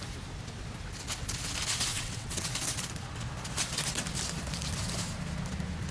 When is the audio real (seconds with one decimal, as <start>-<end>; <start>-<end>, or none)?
0.0-1.9; 2.5-5.9